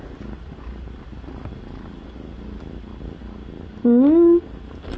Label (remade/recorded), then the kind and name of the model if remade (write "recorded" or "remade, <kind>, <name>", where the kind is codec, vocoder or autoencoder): recorded